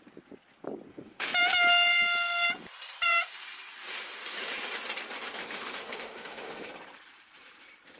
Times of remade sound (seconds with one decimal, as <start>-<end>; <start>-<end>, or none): 0.9-1.4; 5.4-6.7